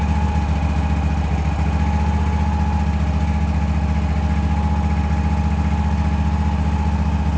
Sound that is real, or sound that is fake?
real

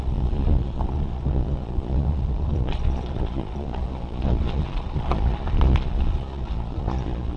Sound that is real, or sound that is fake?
fake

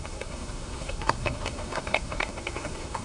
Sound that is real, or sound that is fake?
fake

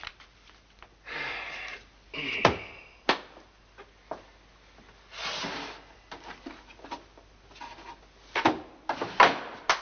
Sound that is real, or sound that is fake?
real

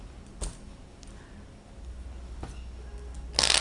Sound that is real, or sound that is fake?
real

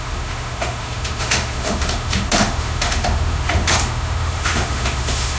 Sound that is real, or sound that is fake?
fake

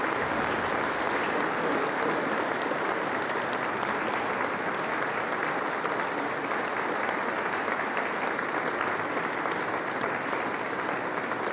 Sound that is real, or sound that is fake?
real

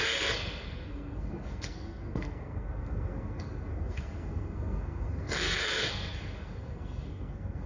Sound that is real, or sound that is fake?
fake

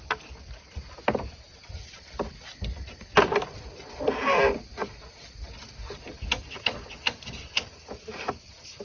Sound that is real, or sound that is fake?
real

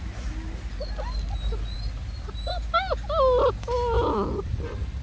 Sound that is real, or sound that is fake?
real